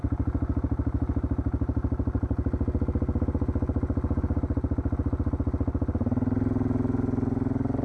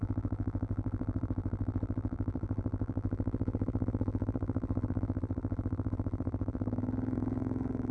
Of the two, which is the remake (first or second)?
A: second